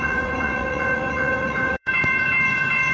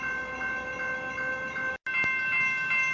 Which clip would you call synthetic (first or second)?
first